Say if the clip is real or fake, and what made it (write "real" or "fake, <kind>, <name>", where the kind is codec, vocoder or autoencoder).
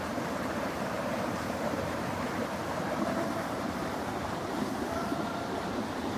fake, vocoder, BigVGAN v2